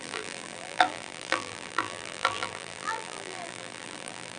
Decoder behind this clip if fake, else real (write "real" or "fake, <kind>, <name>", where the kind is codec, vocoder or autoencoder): fake, vocoder, BigVGAN v2